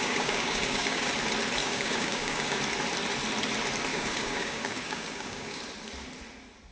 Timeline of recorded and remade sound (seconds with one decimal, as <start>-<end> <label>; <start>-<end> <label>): 0.0-1.1 remade; 1.1-1.6 recorded; 1.6-2.6 remade; 2.6-3.9 recorded; 3.9-5.6 remade; 5.6-6.7 recorded